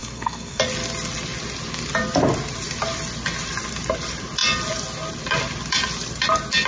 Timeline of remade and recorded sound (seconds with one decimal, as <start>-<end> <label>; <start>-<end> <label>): 0.0-0.6 remade; 0.6-6.7 recorded